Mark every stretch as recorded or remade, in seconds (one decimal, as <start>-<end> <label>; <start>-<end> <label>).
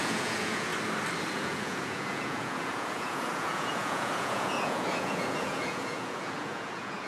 0.0-0.7 remade; 0.7-1.3 recorded; 1.3-7.1 remade